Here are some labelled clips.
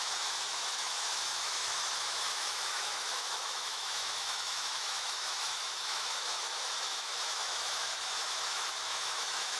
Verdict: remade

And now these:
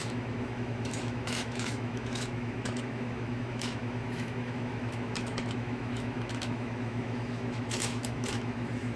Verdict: remade